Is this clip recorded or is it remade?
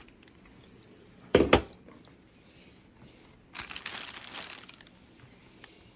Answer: recorded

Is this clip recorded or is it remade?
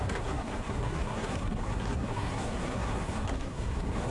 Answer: remade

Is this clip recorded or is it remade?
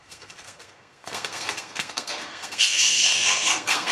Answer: remade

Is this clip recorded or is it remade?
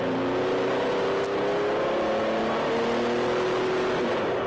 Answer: recorded